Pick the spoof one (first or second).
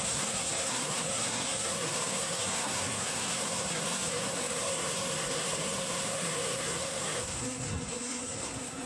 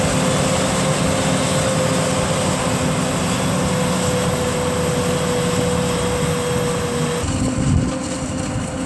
first